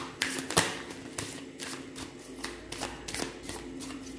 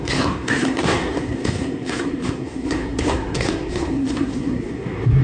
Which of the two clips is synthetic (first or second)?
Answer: second